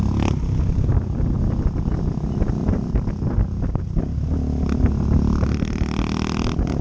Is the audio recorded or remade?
recorded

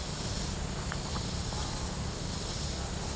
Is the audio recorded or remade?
recorded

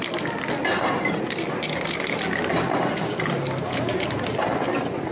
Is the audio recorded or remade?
recorded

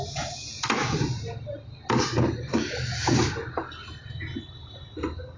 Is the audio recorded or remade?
recorded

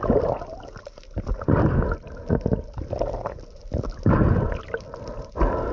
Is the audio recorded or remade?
recorded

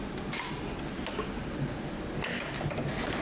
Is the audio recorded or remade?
recorded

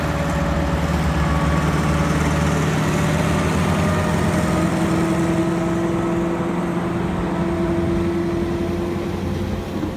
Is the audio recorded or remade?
recorded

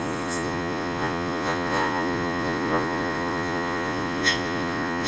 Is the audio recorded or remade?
remade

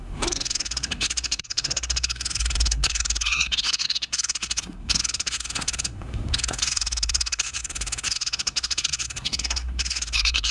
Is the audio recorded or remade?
remade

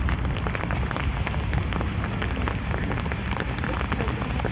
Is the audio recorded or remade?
recorded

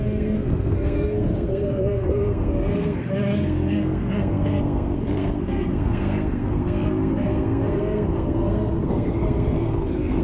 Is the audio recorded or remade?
remade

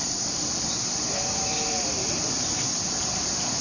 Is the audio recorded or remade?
remade